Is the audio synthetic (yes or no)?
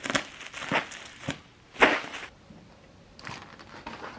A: no